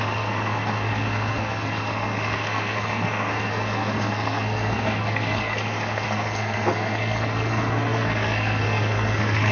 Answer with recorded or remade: remade